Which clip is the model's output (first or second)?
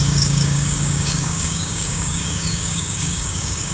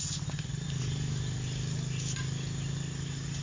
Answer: first